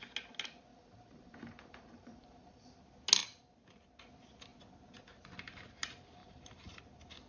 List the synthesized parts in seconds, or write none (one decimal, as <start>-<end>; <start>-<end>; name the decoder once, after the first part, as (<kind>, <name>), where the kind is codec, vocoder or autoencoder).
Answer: 0.7-2.8 (vocoder, BigVGAN v2); 6.2-6.8